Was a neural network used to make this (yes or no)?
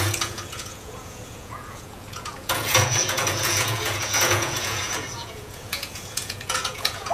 yes